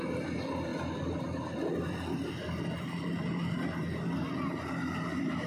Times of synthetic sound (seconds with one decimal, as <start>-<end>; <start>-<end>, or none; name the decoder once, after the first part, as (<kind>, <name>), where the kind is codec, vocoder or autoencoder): none